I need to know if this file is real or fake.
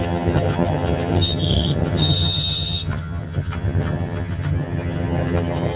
fake